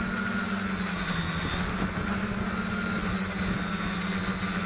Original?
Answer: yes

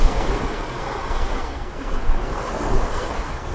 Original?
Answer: no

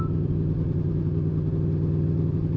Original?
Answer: yes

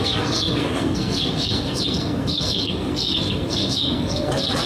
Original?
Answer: no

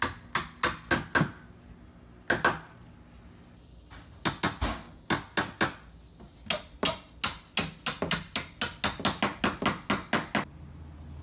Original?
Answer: yes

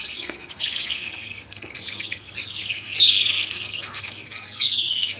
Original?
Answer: no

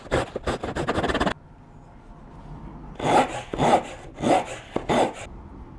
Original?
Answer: yes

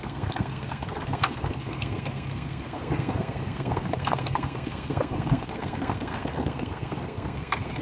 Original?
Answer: no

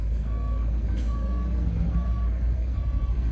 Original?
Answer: no